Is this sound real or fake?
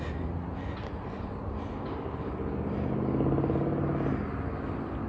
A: real